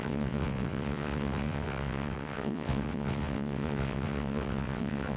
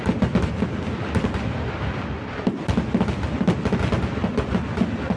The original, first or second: second